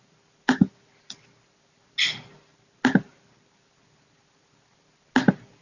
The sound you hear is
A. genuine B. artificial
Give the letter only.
A